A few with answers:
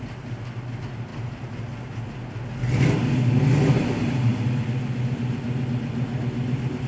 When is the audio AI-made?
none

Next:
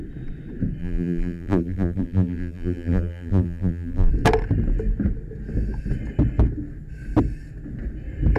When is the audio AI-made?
0.8-4.1 (vocoder, BigVGAN v2)

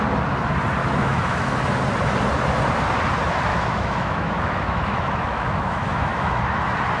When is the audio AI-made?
0.8-1.6 (autoencoder, DAC-VAE); 3.5-6.6

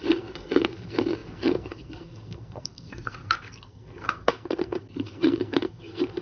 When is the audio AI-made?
0.0-6.2 (codec, SNAC)

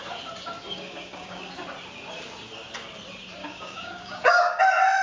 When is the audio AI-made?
0.7-1.5 (codec, DAC); 3.4-4.6

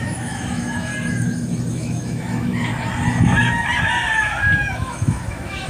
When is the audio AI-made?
0.0-0.9 (autoencoder, DAC-VAE); 1.7-2.7; 4.7-5.7

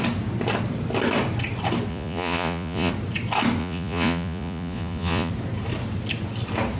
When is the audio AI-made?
1.9-2.9 (vocoder, Vocos); 3.6-5.3